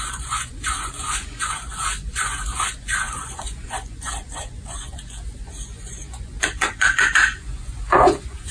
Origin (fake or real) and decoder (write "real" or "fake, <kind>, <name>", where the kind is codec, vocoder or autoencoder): fake, vocoder, Vocos